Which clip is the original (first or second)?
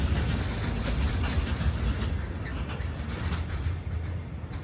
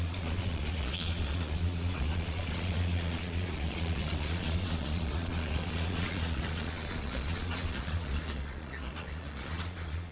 first